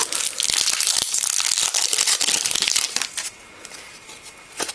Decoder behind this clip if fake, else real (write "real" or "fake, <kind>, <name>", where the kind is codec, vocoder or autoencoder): real